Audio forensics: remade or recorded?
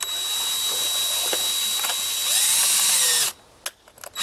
recorded